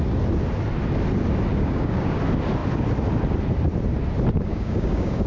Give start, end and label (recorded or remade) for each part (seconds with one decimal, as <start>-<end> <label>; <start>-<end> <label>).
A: 0.0-1.5 recorded; 1.5-2.2 remade; 2.2-4.5 recorded; 4.5-5.3 remade